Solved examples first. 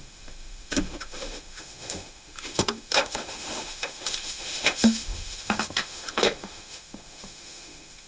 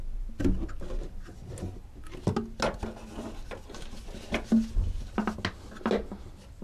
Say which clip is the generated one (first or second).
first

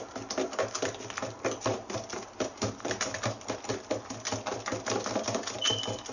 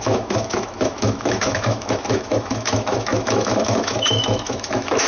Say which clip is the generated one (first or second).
second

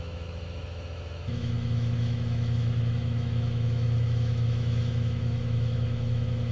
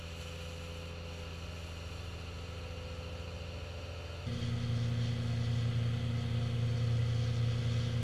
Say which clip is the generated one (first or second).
first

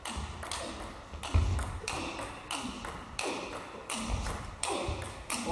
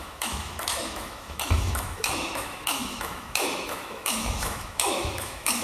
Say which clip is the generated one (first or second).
second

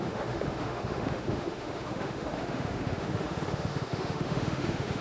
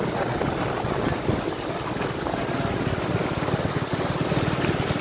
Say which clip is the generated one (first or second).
first